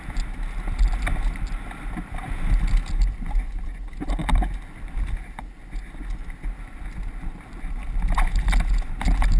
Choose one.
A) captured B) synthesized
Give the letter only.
A